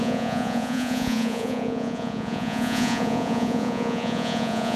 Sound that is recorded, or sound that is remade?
remade